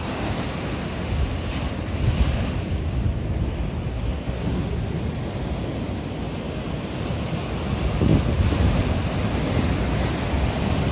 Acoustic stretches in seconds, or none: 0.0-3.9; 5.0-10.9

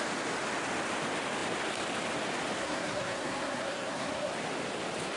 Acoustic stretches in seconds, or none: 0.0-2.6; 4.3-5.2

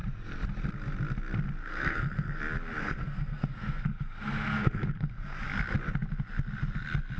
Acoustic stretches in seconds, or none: 0.0-1.6; 2.4-2.8; 5.4-7.2

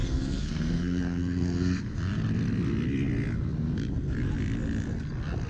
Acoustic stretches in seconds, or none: 1.8-5.5